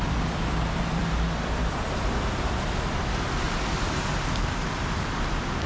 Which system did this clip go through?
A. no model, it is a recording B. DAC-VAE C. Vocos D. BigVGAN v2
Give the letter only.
D